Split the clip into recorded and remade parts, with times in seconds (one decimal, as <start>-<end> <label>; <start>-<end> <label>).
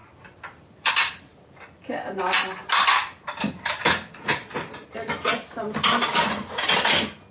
0.0-0.9 remade; 0.9-1.3 recorded; 1.3-2.2 remade; 2.2-7.3 recorded